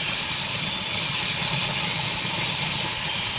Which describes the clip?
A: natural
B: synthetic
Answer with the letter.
A